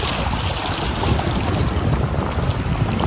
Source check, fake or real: real